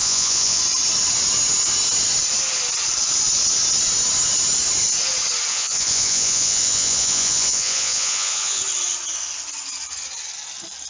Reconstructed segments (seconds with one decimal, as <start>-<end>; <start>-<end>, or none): 0.0-0.6; 5.5-8.6